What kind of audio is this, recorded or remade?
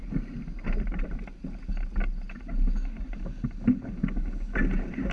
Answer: recorded